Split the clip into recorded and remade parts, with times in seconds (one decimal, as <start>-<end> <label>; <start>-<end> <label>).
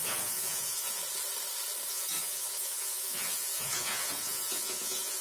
0.0-1.0 remade; 1.0-1.9 recorded; 1.9-5.2 remade